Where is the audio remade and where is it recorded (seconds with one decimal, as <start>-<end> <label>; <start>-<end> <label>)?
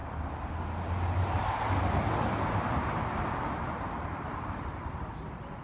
0.0-0.5 recorded; 0.5-5.6 remade